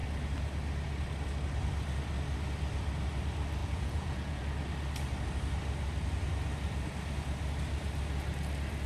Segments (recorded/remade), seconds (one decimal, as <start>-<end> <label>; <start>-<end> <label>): 0.0-3.6 recorded; 3.6-4.4 remade; 4.4-8.9 recorded